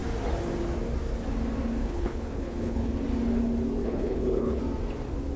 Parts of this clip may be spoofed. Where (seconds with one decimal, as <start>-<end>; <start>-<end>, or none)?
1.8-2.9; 3.8-4.6